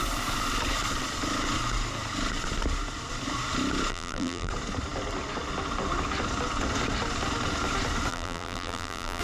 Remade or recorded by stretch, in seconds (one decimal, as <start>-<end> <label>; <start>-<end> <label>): 0.0-3.9 recorded; 3.9-4.5 remade; 4.5-8.1 recorded; 8.1-9.2 remade